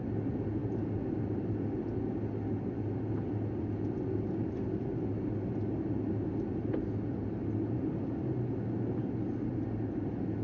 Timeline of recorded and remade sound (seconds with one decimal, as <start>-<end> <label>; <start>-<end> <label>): 0.0-10.4 recorded